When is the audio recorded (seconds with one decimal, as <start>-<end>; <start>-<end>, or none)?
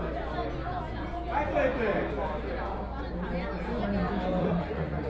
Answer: 0.0-4.4